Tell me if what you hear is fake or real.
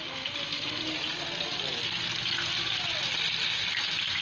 real